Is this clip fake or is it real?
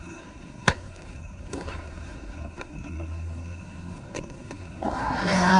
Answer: fake